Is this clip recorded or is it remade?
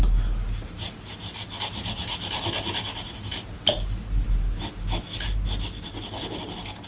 recorded